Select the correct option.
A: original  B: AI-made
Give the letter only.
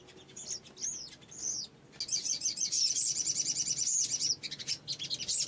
A